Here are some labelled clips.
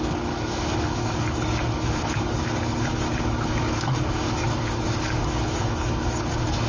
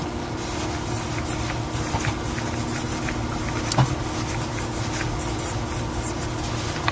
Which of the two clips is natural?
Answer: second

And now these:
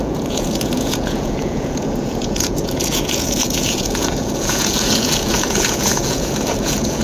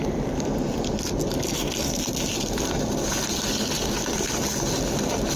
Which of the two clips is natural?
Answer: second